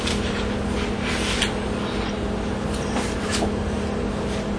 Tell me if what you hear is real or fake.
real